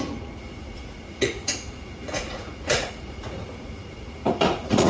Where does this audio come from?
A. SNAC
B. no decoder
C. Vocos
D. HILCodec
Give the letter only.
C